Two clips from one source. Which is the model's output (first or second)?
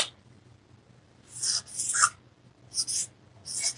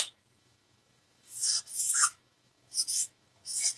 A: second